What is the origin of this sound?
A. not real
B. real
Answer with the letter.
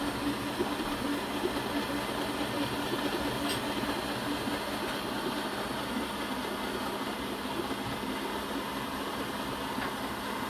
B